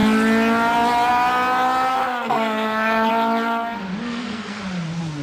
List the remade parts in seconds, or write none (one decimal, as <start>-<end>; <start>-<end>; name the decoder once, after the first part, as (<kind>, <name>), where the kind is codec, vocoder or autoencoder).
1.9-3.1 (codec, SNAC); 4.0-4.6